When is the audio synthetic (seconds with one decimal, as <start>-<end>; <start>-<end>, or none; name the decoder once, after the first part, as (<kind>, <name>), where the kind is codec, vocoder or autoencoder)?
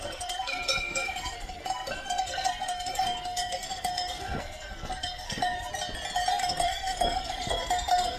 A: 0.0-5.7 (codec, SNAC); 6.3-8.2